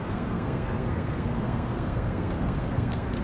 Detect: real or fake fake